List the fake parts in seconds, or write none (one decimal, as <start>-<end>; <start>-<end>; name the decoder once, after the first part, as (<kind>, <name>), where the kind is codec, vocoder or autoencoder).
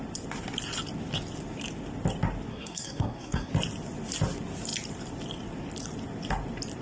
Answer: 2.5-3.5 (codec, SNAC)